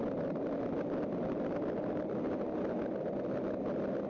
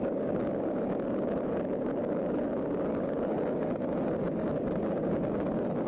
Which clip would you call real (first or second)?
first